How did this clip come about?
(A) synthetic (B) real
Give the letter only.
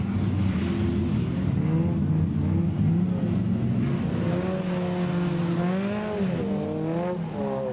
B